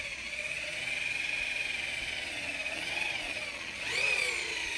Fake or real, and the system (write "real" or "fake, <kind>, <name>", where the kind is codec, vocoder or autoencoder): fake, vocoder, Vocos